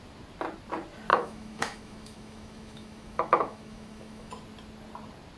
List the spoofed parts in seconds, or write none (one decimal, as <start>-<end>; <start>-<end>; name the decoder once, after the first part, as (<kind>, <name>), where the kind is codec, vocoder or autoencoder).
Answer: 1.1-4.3 (autoencoder, DAC-VAE)